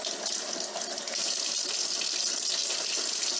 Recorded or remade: recorded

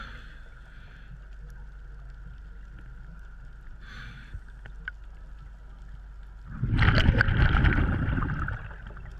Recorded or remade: recorded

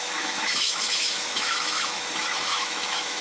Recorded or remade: remade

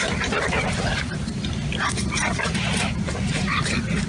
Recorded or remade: remade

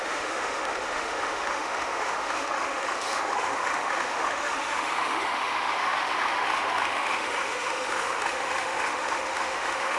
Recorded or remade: remade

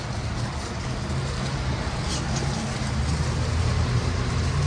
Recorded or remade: recorded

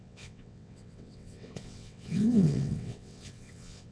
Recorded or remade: remade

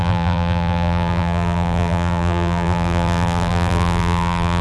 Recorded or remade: remade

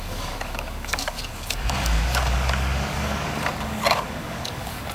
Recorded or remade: remade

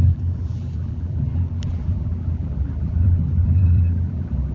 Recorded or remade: remade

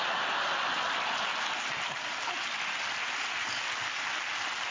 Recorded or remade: recorded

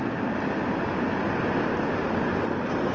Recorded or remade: recorded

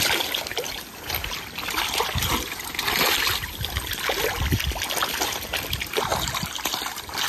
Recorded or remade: recorded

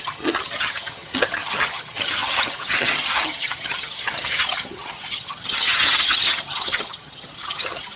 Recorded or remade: remade